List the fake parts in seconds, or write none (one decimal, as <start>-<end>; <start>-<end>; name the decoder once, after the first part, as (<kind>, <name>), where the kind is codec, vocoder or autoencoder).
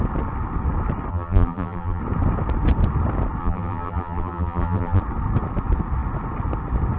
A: 1.1-2.0 (vocoder, BigVGAN v2); 3.4-5.0